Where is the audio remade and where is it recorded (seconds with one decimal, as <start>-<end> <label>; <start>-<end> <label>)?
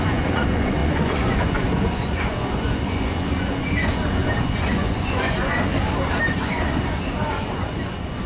0.0-5.7 remade; 5.7-6.3 recorded; 6.3-8.3 remade